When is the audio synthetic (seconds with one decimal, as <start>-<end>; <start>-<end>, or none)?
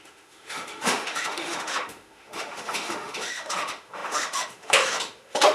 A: 0.0-5.5